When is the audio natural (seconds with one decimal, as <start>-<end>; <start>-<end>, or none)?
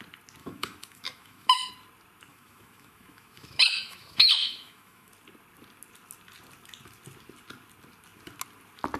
0.0-0.4; 1.7-2.3; 5.1-9.0